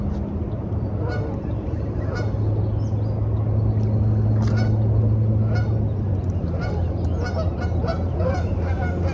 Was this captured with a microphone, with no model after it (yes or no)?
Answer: yes